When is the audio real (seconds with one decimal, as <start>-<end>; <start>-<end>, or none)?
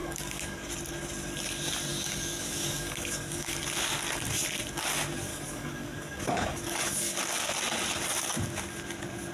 0.7-1.9; 3.6-5.3; 7.2-9.3